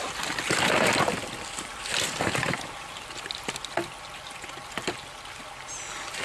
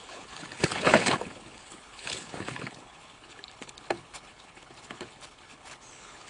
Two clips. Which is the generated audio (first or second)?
second